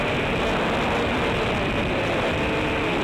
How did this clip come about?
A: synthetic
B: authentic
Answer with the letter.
B